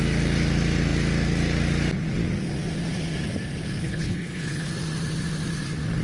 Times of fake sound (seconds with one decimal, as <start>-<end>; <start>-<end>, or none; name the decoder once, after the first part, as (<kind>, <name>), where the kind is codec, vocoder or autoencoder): 3.8-4.7 (codec, HILCodec)